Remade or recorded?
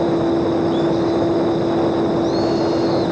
recorded